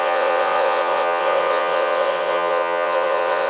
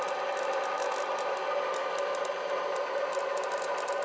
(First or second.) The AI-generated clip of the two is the first